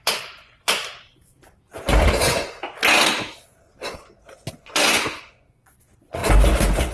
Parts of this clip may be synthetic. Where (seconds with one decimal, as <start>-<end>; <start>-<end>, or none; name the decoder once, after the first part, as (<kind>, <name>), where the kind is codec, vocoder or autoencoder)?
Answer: 0.0-0.8 (vocoder, Vocos); 2.2-2.6; 4.5-6.2